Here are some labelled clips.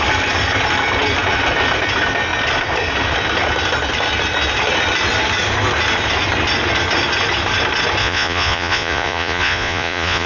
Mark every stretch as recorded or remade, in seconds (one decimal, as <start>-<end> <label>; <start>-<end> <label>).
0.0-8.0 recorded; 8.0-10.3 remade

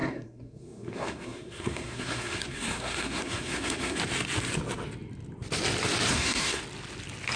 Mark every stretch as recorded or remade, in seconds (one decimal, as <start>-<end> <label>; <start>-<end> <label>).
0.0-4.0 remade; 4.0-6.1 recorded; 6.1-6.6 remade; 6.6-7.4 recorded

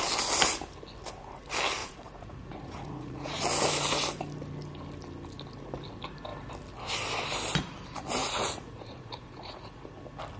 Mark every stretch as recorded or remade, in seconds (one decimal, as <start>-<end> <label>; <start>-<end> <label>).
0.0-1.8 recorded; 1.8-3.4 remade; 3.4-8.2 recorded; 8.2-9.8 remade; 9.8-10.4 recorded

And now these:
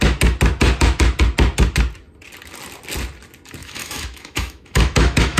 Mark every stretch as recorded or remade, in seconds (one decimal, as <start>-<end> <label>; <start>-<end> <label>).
0.0-3.6 recorded; 3.6-5.4 remade

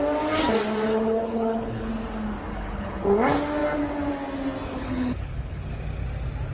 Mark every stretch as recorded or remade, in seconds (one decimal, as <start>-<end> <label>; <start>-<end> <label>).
0.0-0.9 recorded; 0.9-1.9 remade; 1.9-2.5 recorded; 2.5-3.0 remade; 3.0-4.7 recorded; 4.7-5.7 remade; 5.7-6.5 recorded